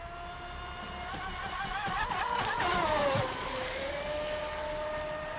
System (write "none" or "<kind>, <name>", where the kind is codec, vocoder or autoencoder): none